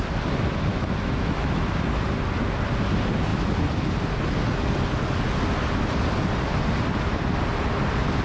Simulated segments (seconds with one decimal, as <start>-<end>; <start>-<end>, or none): 0.7-2.0